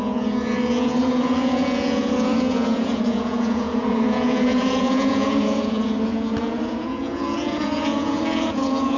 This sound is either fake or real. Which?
fake